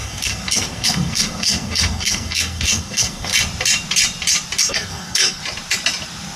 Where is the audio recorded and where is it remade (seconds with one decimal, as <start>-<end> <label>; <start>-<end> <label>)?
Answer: 0.0-3.3 remade; 3.3-4.7 recorded; 4.7-5.4 remade; 5.4-6.4 recorded